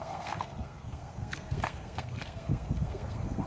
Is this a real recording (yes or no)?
no